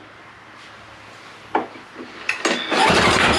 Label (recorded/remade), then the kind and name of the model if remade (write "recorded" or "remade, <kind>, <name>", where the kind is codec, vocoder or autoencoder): recorded